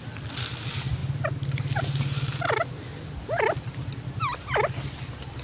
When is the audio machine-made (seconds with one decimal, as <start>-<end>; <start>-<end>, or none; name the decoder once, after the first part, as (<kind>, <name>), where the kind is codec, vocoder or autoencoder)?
none